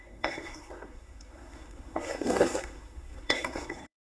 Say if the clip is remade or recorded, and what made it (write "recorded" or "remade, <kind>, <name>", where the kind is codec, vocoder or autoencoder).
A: remade, codec, SNAC